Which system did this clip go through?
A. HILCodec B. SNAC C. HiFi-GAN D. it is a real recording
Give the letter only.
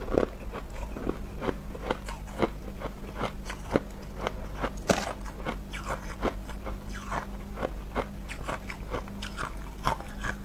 D